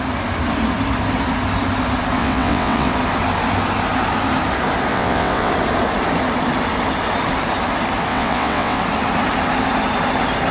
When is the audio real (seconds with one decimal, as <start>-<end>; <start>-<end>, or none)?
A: 0.0-2.2; 2.9-4.9; 5.5-8.1; 8.8-10.5